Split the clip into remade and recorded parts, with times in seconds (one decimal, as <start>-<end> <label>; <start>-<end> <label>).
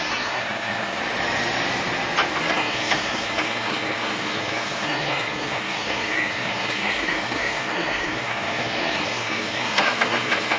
0.0-1.0 remade; 1.0-2.4 recorded; 2.4-10.6 remade